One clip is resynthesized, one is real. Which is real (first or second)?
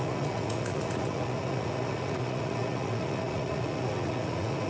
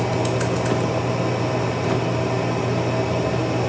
second